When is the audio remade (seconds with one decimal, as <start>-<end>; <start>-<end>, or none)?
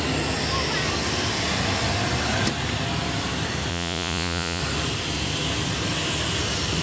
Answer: 3.7-4.6